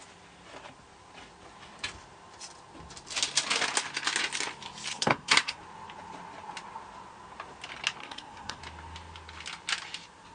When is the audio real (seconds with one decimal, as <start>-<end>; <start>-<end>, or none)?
0.0-4.9; 5.6-8.0; 8.6-10.3